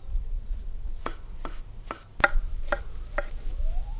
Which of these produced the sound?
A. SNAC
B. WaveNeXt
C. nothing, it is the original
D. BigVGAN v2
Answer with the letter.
C